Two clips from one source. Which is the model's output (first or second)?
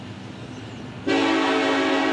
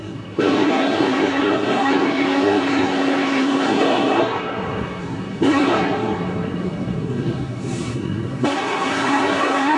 second